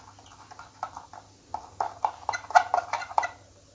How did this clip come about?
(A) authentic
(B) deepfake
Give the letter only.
A